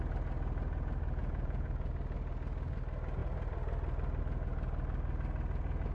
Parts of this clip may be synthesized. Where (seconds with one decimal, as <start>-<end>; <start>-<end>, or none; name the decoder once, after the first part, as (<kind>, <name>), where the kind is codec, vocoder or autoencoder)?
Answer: 1.2-1.9 (vocoder, Vocos)